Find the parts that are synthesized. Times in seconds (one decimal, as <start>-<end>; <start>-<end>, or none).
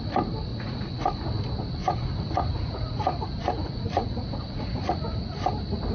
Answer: 0.5-1.0; 1.8-5.3